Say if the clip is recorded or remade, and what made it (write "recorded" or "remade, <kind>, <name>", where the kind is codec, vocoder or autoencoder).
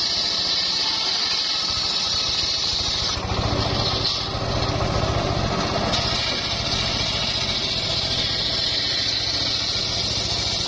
recorded